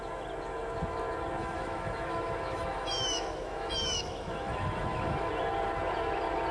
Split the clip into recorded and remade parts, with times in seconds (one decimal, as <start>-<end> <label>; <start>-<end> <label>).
0.0-1.4 recorded; 1.4-5.3 remade; 5.3-6.5 recorded